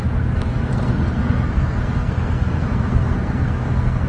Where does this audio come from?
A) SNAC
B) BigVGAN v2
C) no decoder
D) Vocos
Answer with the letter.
A